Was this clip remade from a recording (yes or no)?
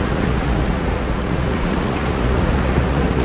yes